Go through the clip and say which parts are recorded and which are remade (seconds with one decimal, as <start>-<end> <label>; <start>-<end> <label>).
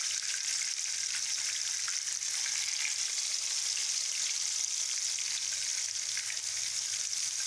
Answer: 0.0-7.5 recorded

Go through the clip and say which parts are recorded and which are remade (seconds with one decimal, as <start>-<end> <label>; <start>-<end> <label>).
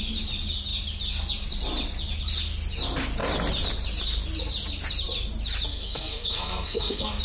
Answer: 0.0-5.7 recorded; 5.7-7.2 remade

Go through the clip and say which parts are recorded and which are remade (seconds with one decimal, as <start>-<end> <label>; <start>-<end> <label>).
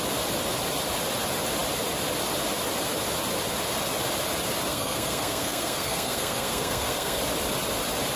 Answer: 0.0-4.7 recorded; 4.7-7.2 remade; 7.2-8.2 recorded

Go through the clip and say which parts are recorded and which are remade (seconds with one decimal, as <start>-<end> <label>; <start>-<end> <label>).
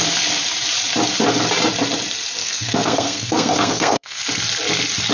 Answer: 0.0-2.4 recorded; 2.4-4.2 remade; 4.2-5.1 recorded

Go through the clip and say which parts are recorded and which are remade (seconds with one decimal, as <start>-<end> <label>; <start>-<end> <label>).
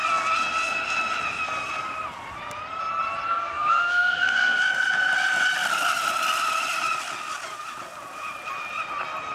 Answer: 0.0-3.3 recorded; 3.3-4.6 remade; 4.6-9.3 recorded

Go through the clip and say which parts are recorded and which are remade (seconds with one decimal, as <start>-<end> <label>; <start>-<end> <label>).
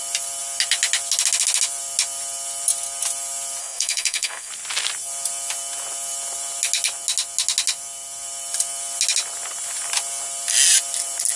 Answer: 0.0-3.6 recorded; 3.6-4.5 remade; 4.5-11.4 recorded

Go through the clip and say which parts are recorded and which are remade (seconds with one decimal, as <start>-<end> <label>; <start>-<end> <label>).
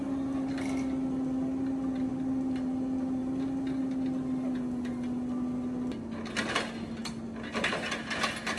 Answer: 0.0-8.6 recorded